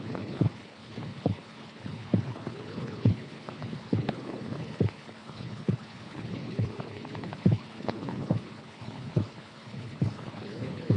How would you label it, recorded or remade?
remade